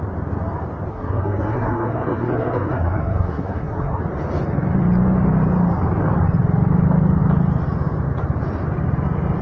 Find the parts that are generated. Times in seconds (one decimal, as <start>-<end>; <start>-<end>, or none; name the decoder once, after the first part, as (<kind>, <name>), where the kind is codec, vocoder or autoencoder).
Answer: 0.9-4.0 (codec, SNAC)